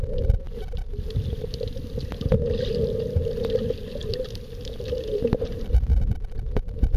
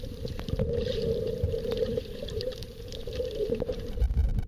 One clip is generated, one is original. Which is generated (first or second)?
second